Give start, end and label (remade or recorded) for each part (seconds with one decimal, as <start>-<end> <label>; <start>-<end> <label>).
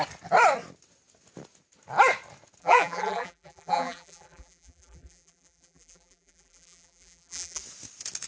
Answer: 0.0-2.6 recorded; 2.6-7.6 remade; 7.6-8.3 recorded